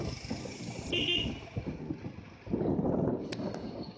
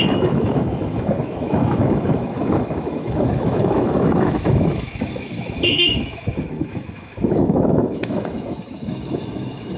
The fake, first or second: second